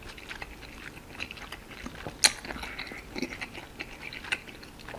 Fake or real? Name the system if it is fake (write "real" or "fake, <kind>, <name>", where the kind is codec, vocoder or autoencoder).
real